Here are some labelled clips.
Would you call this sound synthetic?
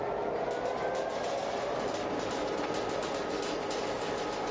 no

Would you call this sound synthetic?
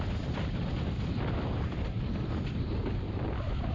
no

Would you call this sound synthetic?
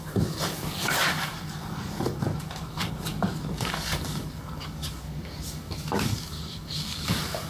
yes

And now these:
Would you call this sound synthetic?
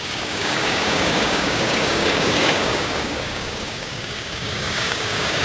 yes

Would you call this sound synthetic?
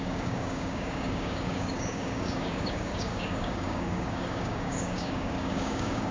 yes